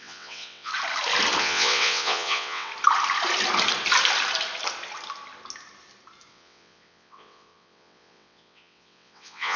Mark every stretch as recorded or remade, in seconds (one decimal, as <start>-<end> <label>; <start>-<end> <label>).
0.0-0.7 remade; 0.7-1.4 recorded; 1.4-2.7 remade; 2.7-6.3 recorded; 6.3-9.6 remade